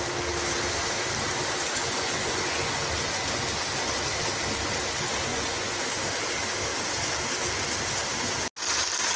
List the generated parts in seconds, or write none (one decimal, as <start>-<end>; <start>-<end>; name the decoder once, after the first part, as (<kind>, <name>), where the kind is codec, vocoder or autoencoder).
1.8-2.8 (vocoder, Vocos); 5.3-6.0